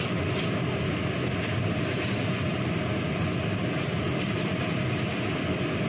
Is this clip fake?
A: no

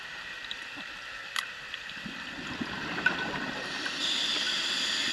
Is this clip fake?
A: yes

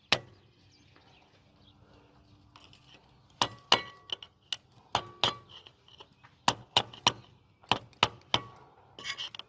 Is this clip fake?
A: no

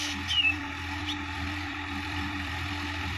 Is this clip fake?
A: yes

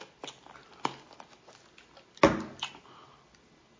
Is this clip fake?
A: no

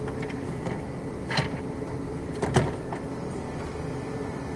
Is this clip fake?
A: no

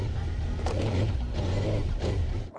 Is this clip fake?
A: yes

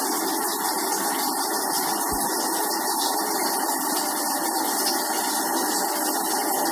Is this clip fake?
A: no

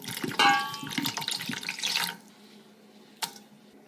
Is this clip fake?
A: no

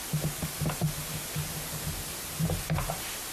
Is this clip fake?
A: no